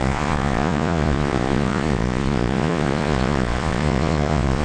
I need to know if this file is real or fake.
fake